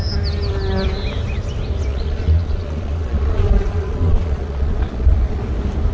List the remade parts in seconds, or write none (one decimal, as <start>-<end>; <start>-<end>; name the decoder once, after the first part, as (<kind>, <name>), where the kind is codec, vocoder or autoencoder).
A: 1.9-5.4 (vocoder, Vocos)